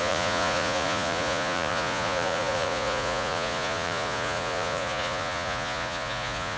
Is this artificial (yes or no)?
yes